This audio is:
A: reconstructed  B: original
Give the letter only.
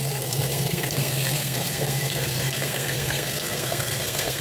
A